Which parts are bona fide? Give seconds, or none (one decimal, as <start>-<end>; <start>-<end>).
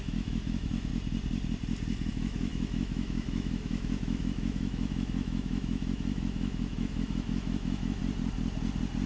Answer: 0.9-2.1; 8.0-9.1